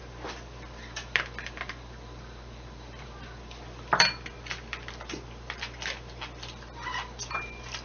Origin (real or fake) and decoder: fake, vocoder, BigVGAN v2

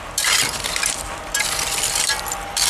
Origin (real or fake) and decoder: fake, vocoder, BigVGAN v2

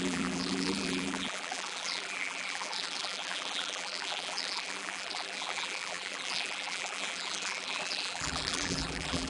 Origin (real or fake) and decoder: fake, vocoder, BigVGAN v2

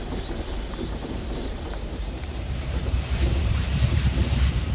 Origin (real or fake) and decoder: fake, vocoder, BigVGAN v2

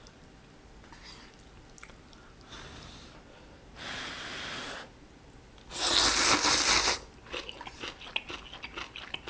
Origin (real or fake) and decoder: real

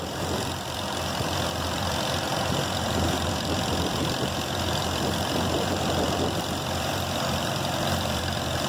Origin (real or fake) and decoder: fake, vocoder, BigVGAN v2